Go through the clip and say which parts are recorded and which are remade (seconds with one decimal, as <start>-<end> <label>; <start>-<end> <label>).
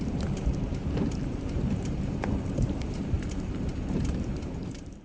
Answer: 0.0-5.0 remade